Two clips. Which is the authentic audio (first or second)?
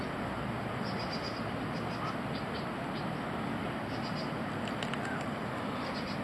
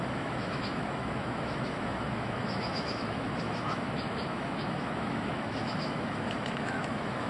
first